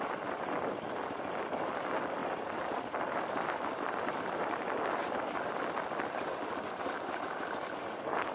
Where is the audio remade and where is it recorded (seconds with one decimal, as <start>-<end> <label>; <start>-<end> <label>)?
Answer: 0.0-2.2 recorded; 2.2-2.7 remade; 2.7-5.0 recorded; 5.0-5.6 remade; 5.6-8.3 recorded